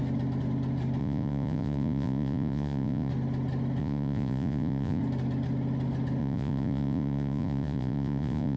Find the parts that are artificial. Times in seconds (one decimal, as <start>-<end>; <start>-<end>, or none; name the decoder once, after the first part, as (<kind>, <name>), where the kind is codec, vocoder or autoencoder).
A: 1.0-3.1 (vocoder, Vocos); 3.8-5.0; 6.2-8.6